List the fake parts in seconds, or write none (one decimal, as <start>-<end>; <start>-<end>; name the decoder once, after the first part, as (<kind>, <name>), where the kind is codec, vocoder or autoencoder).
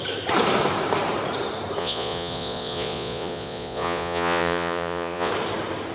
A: 1.8-5.3 (vocoder, Vocos)